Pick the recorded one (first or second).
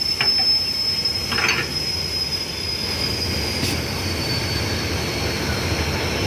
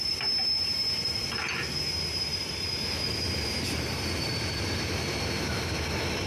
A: first